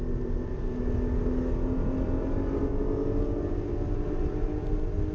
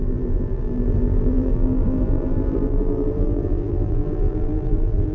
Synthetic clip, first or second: second